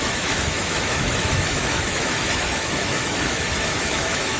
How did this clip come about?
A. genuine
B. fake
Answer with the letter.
B